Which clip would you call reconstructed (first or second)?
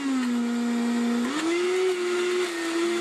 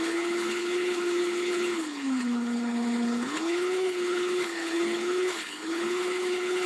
second